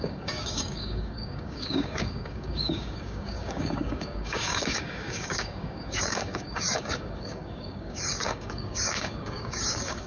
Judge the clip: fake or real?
fake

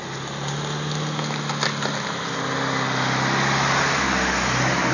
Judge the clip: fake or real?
real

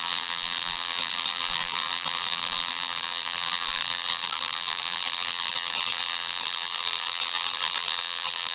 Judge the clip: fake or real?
fake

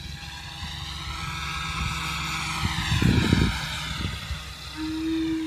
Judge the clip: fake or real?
real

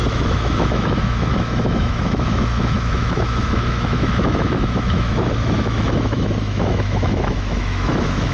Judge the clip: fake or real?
fake